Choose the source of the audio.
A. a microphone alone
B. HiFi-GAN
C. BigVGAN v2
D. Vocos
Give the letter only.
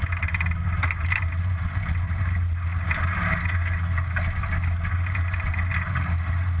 A